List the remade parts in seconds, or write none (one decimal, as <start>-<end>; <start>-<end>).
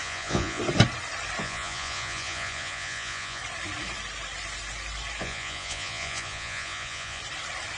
0.0-0.6; 1.4-3.4; 5.2-7.2